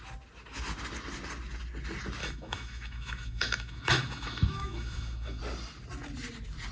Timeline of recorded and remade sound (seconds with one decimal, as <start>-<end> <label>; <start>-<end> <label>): 0.0-2.2 recorded; 2.2-5.4 remade; 5.4-6.7 recorded